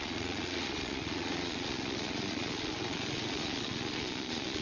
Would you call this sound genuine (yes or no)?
no